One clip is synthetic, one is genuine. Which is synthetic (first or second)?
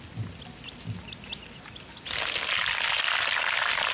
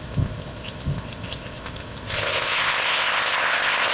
second